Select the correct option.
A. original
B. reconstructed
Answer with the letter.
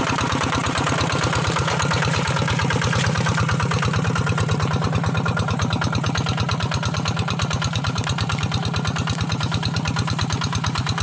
B